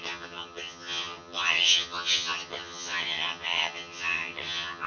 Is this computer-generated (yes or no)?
yes